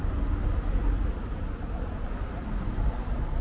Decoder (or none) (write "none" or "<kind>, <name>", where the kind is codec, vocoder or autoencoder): none